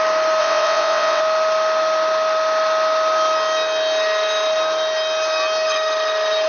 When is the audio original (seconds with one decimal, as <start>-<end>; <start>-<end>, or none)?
0.0-0.4; 1.2-6.5